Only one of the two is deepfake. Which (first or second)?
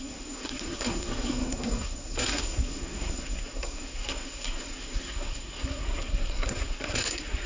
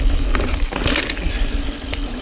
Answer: first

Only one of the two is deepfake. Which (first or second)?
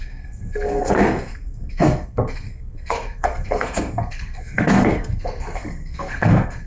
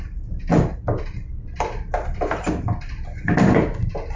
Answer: first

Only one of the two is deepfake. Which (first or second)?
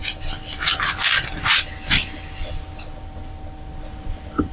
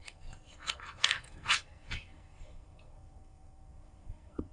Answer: second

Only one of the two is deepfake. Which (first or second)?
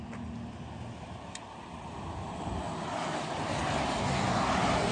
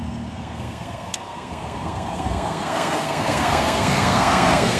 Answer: second